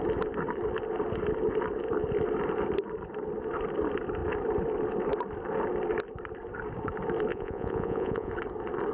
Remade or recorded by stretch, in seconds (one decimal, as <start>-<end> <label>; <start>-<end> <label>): 0.0-7.3 recorded; 7.3-8.3 remade; 8.3-8.9 recorded